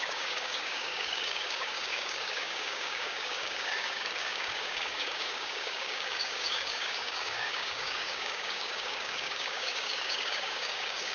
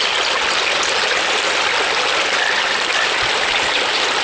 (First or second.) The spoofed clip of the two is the first